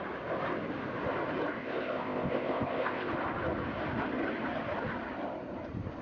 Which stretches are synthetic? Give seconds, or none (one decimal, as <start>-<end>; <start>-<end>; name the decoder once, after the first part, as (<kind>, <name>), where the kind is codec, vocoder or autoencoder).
1.6-3.1 (codec, ZipCodec)